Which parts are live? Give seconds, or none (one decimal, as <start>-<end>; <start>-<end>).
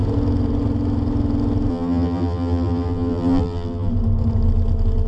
0.0-1.7; 3.9-5.1